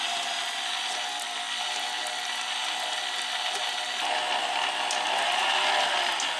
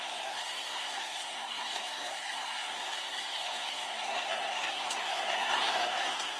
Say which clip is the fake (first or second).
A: second